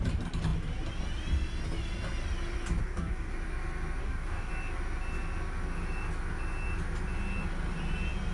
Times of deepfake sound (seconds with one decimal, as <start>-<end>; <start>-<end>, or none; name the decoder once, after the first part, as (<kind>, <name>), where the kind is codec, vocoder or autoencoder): 2.8-3.3 (codec, DAC); 4.0-4.5